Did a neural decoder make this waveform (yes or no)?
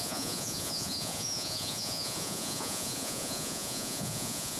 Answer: yes